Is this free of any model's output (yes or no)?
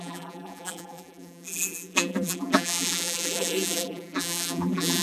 no